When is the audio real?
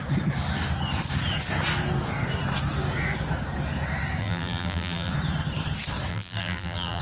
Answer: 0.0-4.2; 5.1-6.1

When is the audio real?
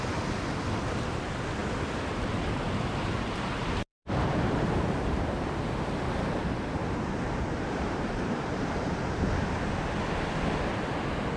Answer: 0.0-3.9; 5.2-6.8; 9.2-11.4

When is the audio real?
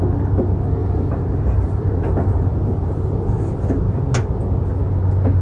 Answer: 0.0-0.8; 4.0-5.4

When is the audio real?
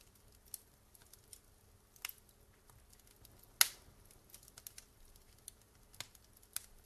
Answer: 0.0-6.9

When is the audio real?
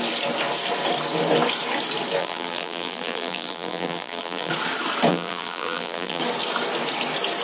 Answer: 0.0-2.2; 4.5-5.1; 6.2-7.4